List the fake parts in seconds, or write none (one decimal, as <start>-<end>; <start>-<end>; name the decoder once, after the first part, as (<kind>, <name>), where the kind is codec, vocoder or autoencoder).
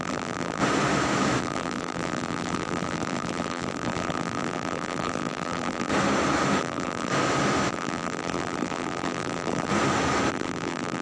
0.0-0.6 (vocoder, BigVGAN v2); 1.4-5.9; 6.6-7.1; 7.7-9.7; 10.3-11.0